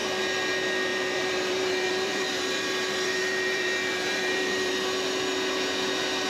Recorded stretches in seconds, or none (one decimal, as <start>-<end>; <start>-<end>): 0.0-0.9; 4.7-6.3